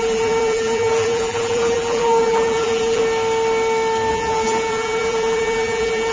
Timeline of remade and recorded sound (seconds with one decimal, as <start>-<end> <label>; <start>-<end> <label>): 0.0-3.0 remade; 3.0-4.1 recorded; 4.1-6.1 remade